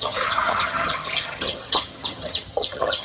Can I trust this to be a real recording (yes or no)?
no